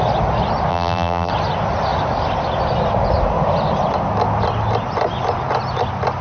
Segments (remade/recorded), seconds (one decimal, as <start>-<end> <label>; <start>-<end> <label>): 0.0-0.7 recorded; 0.7-1.3 remade; 1.3-6.2 recorded